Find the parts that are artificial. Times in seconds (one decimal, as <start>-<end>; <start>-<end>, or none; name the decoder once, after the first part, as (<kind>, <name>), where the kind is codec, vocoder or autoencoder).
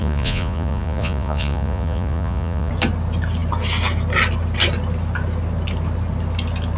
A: 0.0-2.7 (vocoder, Vocos)